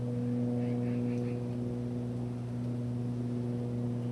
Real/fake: real